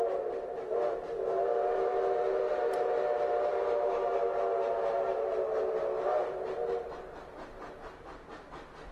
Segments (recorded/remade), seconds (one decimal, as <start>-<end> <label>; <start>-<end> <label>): 0.0-8.9 recorded